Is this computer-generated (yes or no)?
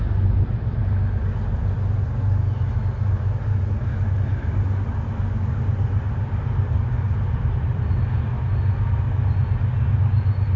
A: no